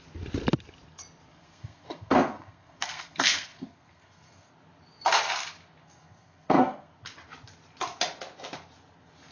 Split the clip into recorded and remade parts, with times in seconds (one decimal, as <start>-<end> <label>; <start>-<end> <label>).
0.0-1.3 recorded; 1.3-4.5 remade; 4.5-5.8 recorded; 5.8-6.9 remade; 6.9-9.3 recorded